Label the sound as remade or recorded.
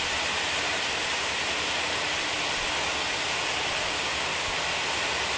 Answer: recorded